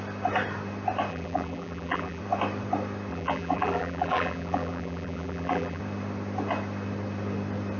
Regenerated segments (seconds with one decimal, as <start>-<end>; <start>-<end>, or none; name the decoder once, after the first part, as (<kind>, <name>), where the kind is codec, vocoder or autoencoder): 1.1-2.2 (vocoder, BigVGAN v2); 3.1-5.8